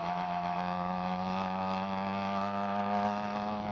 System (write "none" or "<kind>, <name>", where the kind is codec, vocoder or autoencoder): autoencoder, DAC-VAE